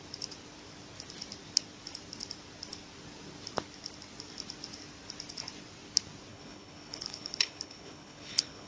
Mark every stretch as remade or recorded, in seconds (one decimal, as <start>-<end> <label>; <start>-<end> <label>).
0.0-6.3 recorded; 6.3-8.7 remade